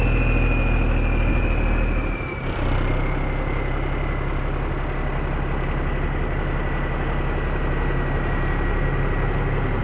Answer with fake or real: real